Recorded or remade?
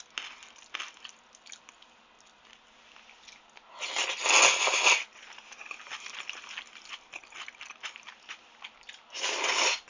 recorded